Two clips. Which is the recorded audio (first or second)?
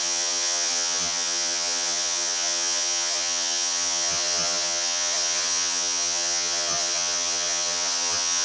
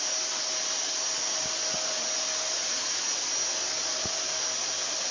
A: second